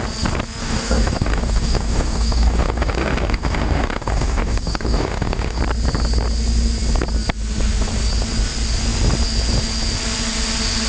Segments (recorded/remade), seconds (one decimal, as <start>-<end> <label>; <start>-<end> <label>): 0.0-0.6 recorded; 0.6-5.6 remade; 5.6-10.9 recorded